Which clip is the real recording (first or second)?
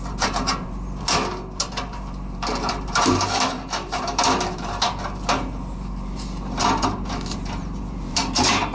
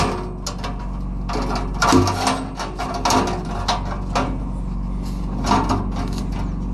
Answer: second